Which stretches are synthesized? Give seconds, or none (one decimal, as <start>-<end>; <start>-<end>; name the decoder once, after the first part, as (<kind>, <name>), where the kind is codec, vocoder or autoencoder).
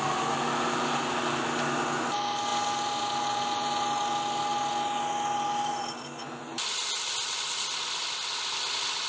none